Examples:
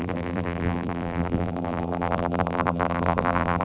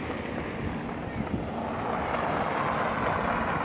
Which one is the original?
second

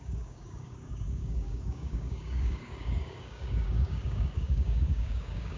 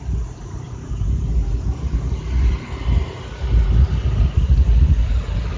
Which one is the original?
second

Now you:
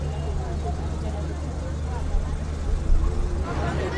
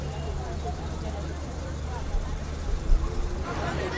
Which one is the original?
first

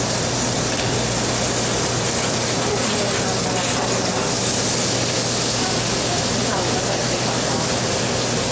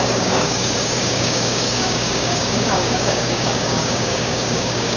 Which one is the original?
first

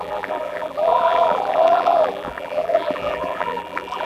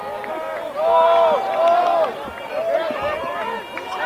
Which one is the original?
second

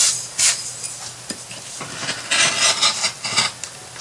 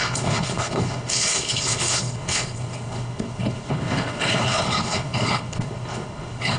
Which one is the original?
first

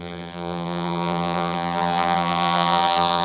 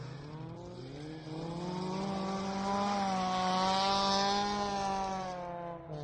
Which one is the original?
second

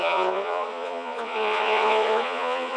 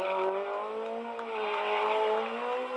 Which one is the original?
second